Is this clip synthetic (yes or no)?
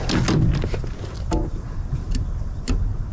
no